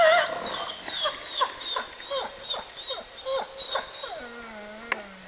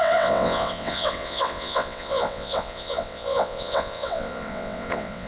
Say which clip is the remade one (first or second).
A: second